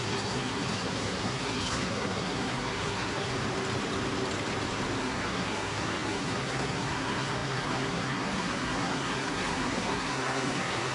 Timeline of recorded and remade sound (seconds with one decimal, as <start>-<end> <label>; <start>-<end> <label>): 0.0-3.3 remade; 3.3-5.0 recorded; 5.0-10.9 remade